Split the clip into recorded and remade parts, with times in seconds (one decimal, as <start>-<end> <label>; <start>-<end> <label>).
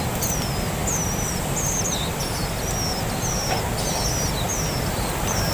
0.0-5.5 recorded